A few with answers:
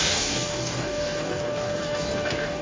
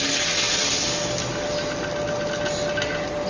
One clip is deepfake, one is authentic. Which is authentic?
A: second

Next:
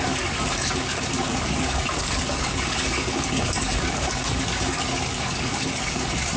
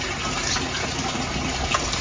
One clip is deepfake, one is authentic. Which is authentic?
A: second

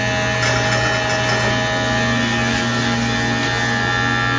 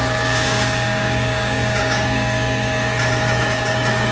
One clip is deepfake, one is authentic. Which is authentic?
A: first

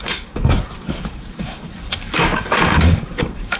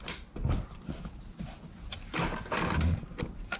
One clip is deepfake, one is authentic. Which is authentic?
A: second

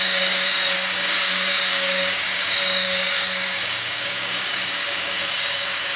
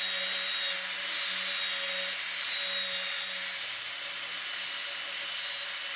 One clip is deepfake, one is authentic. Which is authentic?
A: second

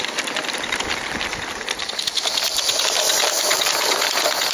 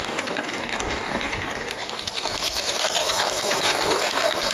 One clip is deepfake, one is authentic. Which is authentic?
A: first